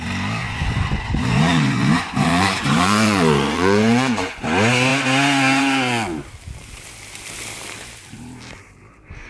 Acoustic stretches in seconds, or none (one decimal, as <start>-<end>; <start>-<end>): 0.0-0.4; 4.4-9.3